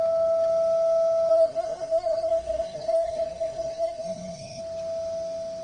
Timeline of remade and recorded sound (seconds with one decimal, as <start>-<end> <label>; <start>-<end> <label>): 0.0-1.3 recorded; 1.3-4.6 remade; 4.6-5.6 recorded